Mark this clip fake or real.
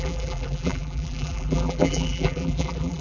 fake